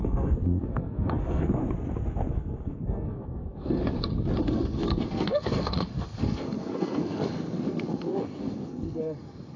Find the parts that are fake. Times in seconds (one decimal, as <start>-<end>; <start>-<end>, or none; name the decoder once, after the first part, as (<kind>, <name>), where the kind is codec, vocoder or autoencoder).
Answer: 0.0-1.6 (codec, SNAC); 2.3-3.8; 4.4-9.6